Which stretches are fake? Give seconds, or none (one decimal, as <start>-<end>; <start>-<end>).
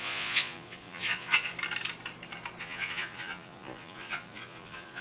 0.0-1.5; 2.6-5.0